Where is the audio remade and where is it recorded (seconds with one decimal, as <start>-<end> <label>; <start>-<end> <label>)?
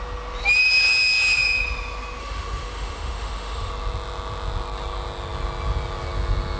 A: 0.0-2.2 recorded; 2.2-3.7 remade; 3.7-6.6 recorded